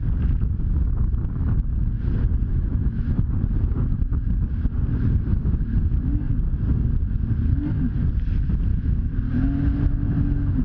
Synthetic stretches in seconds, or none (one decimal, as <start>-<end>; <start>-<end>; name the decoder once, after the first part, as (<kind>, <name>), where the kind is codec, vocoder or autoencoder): 2.5-3.2 (autoencoder, DAC-VAE); 8.7-9.2